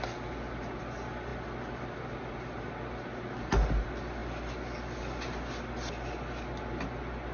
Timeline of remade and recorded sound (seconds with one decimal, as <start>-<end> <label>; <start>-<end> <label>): 0.0-7.3 recorded